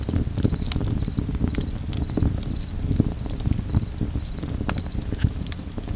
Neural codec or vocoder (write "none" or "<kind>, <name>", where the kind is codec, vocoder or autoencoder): none